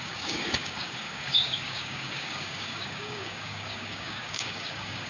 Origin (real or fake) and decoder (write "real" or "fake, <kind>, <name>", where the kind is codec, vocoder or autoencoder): fake, codec, DAC